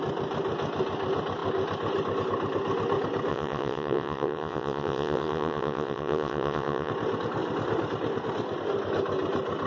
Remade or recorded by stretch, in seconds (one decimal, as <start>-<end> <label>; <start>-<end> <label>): 0.0-3.3 recorded; 3.3-6.9 remade; 6.9-9.7 recorded